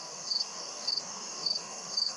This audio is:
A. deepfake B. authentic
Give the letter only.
A